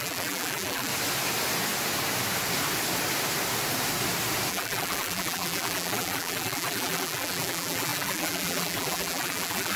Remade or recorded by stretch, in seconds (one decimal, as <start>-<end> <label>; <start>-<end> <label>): 0.0-0.9 remade; 0.9-4.5 recorded; 4.5-9.8 remade